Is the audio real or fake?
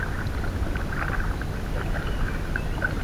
real